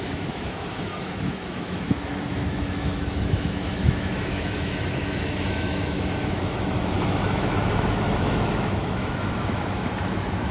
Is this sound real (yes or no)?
no